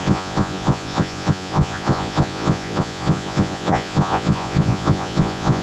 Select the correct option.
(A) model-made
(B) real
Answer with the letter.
A